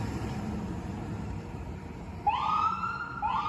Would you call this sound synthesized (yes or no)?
yes